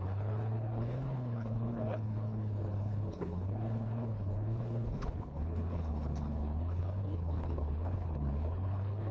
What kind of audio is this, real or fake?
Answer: fake